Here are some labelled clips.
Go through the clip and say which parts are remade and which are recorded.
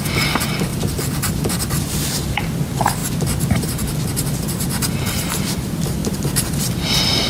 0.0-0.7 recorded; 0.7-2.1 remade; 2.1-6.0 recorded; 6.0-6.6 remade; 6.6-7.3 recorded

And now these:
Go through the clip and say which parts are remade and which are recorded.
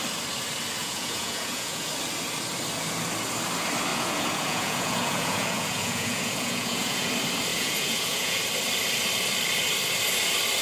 0.0-0.8 recorded; 0.8-1.9 remade; 1.9-3.9 recorded; 3.9-7.1 remade; 7.1-7.5 recorded; 7.5-8.4 remade; 8.4-10.6 recorded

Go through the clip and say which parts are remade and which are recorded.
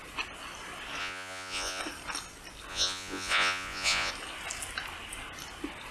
0.0-1.0 recorded; 1.0-1.8 remade; 1.8-2.7 recorded; 2.7-4.1 remade; 4.1-5.9 recorded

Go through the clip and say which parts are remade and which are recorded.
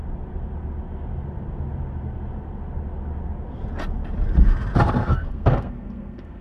0.0-5.0 recorded; 5.0-6.4 remade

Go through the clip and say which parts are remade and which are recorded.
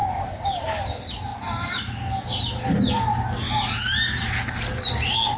0.0-0.6 remade; 0.6-5.4 recorded